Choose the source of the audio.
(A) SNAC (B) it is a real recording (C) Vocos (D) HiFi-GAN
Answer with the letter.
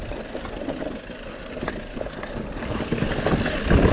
B